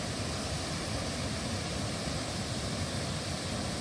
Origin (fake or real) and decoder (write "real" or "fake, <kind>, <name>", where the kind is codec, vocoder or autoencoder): real